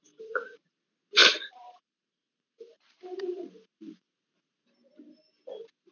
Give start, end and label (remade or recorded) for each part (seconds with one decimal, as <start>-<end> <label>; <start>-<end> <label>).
0.0-0.7 remade; 0.7-1.2 recorded; 1.2-3.4 remade; 3.4-5.9 recorded